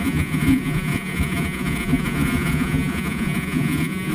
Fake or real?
fake